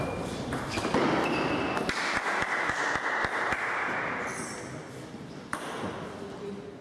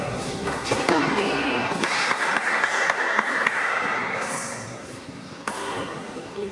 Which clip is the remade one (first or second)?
second